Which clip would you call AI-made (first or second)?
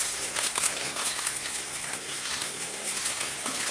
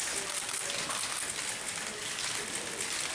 first